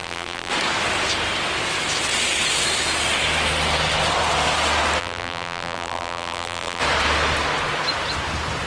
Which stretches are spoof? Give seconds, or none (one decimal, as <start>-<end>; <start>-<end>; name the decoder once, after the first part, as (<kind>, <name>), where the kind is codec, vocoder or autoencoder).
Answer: 0.0-0.5 (vocoder, BigVGAN v2); 5.0-6.8